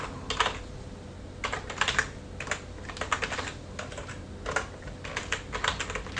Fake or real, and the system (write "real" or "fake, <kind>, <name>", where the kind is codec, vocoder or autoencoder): real